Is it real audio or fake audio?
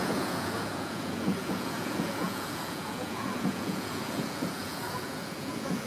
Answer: fake